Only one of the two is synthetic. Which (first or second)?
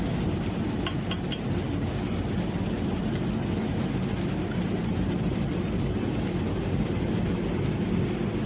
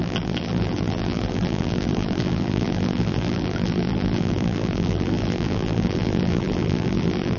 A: second